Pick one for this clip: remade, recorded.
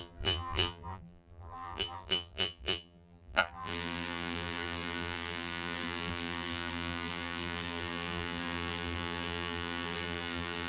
remade